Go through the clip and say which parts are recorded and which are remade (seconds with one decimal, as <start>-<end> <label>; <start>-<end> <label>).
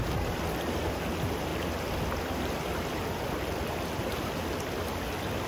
0.0-5.5 recorded